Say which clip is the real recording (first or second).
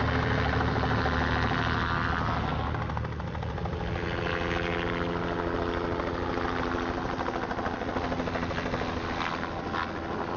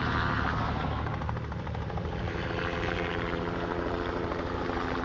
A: first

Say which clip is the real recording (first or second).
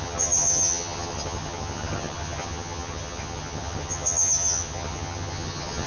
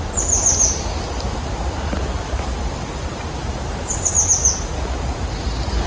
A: second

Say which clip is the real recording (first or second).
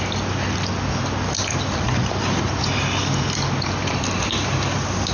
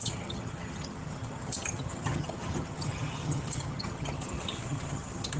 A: first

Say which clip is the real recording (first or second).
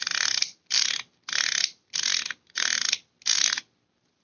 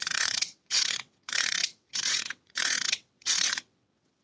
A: first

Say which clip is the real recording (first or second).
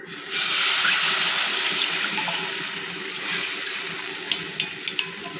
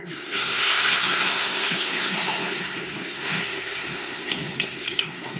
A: first